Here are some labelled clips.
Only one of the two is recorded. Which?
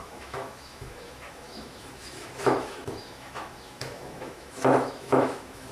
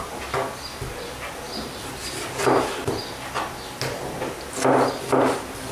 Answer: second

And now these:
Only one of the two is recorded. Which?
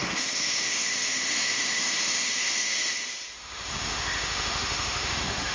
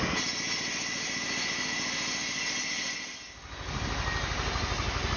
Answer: second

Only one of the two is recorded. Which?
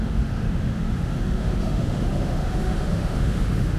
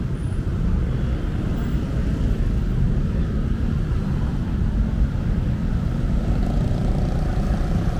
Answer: second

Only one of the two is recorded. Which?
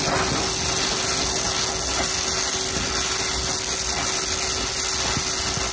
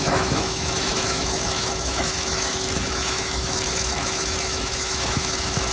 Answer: first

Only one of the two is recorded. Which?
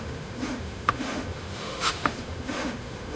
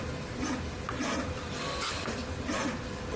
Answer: second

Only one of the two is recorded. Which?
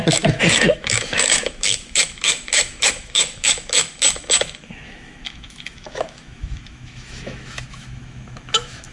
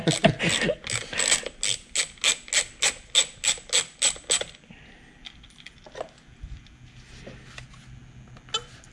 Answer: second